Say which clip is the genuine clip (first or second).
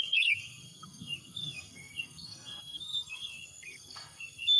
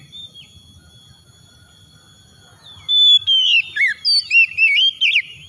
second